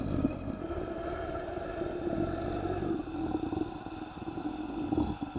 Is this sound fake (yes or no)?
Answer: no